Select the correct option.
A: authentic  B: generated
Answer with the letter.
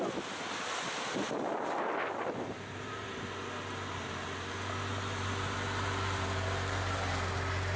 A